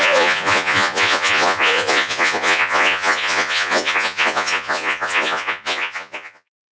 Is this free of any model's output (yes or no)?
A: no